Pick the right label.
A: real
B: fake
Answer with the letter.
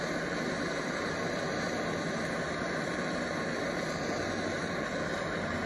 B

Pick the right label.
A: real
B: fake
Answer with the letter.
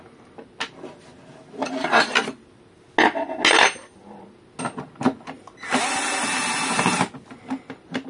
A